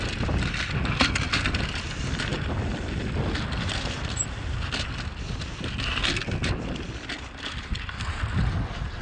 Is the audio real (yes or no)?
yes